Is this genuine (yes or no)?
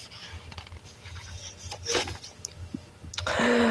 yes